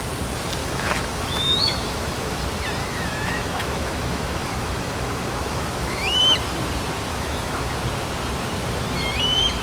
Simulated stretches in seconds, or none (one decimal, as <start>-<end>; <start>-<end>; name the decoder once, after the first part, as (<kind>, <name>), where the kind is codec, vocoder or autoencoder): 0.6-2.4 (autoencoder, DAC-VAE); 2.8-6.2; 7.1-7.7